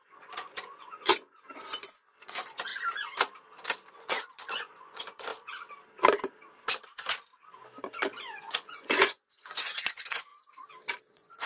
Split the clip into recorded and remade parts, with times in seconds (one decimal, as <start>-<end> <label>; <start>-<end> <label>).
0.0-2.7 remade; 2.7-3.9 recorded; 3.9-5.3 remade; 5.3-8.2 recorded; 8.2-10.3 remade; 10.3-11.1 recorded; 11.1-11.5 remade